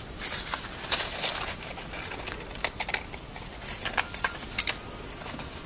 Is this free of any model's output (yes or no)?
yes